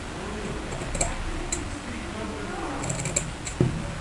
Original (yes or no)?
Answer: yes